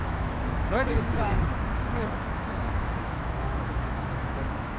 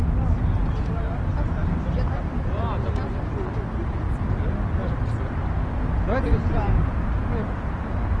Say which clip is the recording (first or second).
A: second